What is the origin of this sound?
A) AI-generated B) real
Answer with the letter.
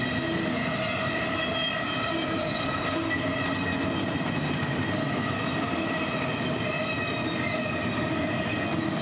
B